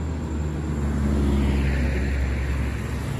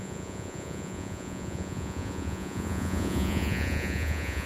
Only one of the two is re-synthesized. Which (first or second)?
second